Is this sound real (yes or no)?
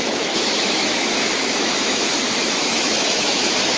no